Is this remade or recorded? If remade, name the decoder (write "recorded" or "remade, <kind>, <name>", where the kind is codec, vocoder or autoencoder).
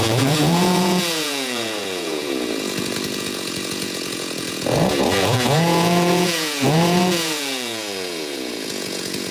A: remade, vocoder, Vocos